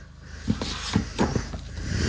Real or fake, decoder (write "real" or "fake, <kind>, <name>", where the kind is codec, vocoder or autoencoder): real